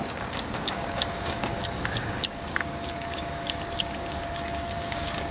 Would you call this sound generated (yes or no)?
yes